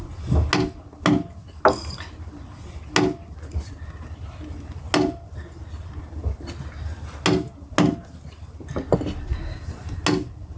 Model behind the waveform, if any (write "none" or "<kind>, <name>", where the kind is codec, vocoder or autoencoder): none